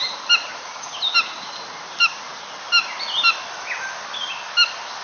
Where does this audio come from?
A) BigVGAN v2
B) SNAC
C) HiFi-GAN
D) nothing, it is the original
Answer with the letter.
D